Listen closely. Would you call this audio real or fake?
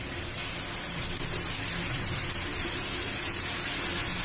real